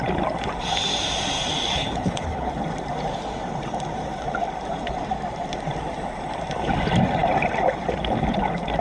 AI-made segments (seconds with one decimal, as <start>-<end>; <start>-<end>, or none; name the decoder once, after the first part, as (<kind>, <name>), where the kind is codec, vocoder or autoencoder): 1.7-2.5 (codec, HILCodec)